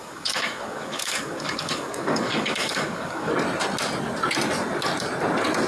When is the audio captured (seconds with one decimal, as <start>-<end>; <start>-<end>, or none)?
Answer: 3.3-5.7